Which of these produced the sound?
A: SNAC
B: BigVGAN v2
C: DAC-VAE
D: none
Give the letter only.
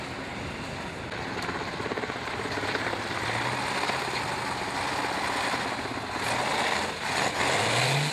D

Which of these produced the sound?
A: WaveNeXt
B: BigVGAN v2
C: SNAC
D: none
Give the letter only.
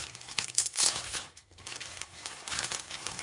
C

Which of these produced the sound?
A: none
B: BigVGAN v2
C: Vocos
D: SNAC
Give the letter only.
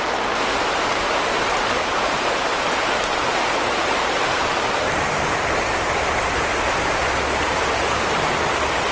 B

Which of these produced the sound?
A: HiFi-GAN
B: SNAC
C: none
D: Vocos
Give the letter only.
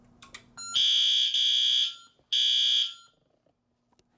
C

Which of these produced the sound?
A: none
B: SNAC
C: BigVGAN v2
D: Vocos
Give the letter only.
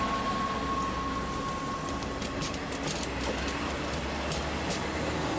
A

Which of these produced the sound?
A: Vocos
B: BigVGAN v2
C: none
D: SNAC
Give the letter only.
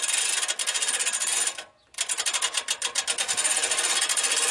C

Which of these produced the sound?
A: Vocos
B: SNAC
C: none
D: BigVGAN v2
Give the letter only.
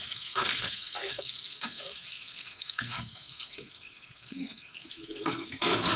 B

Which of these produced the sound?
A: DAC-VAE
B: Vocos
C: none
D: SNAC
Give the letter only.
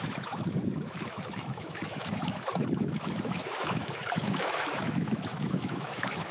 A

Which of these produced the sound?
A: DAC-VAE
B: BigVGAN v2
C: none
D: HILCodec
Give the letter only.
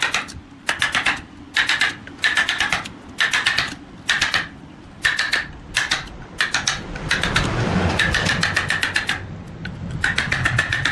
C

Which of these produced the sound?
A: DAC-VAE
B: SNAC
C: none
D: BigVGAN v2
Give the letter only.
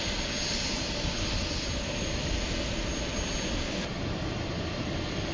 C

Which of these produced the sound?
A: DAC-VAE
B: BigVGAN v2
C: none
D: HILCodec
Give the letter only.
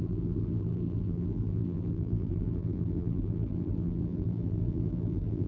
B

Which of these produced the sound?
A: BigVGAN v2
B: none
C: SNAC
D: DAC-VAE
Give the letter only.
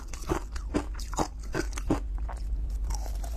B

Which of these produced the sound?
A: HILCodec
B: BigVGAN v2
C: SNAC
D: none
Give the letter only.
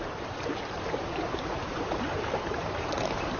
B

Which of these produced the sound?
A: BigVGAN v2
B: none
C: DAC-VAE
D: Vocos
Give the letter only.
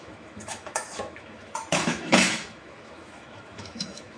C